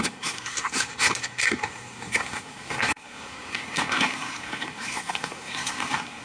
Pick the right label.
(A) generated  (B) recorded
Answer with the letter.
A